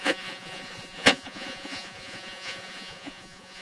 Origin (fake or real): fake